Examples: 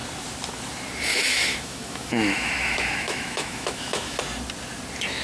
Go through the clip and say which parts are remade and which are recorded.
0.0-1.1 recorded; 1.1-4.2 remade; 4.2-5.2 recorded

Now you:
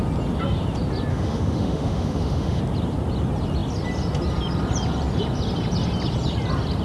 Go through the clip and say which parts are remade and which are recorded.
0.0-1.1 recorded; 1.1-2.6 remade; 2.6-6.8 recorded

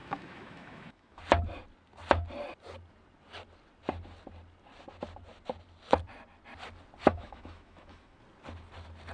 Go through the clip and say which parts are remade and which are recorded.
0.0-1.2 remade; 1.2-7.1 recorded; 7.1-8.2 remade; 8.2-9.1 recorded

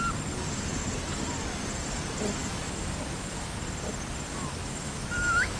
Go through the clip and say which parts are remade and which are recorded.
0.0-2.4 recorded; 2.4-3.6 remade; 3.6-4.3 recorded; 4.3-5.6 remade

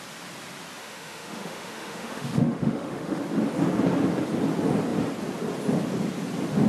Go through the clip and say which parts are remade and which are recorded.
0.0-0.8 recorded; 0.8-3.2 remade; 3.2-6.7 recorded

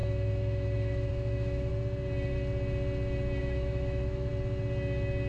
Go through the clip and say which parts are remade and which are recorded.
0.0-1.7 remade; 1.7-3.4 recorded; 3.4-4.3 remade; 4.3-5.3 recorded